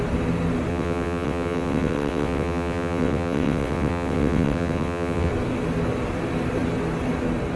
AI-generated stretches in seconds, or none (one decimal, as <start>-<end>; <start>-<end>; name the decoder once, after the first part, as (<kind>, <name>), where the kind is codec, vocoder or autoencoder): 0.7-5.3 (vocoder, WaveNeXt)